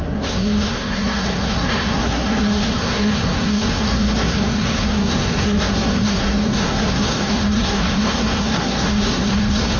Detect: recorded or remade remade